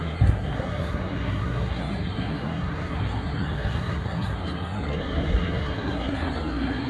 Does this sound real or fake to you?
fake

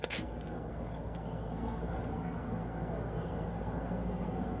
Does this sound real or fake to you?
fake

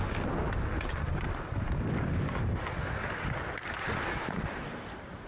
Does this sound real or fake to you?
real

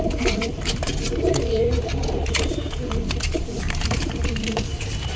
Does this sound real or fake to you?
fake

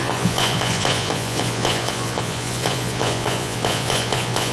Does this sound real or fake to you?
fake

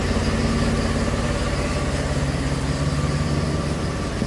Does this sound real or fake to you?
real